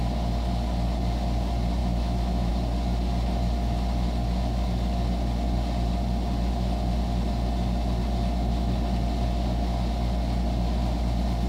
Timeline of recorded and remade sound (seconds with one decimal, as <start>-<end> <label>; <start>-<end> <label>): 0.0-1.8 recorded; 1.8-2.5 remade; 2.5-11.5 recorded